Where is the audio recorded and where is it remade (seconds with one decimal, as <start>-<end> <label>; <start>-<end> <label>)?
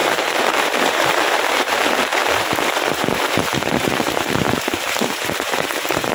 0.0-6.1 remade